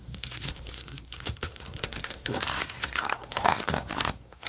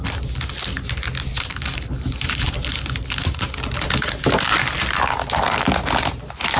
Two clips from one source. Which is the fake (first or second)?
first